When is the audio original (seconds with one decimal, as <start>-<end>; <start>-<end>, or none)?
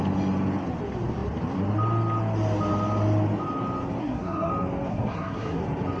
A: 0.0-4.0; 4.5-4.9; 5.6-6.0